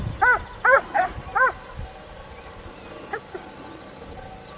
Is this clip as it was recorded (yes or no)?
yes